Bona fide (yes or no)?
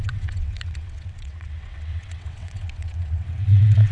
no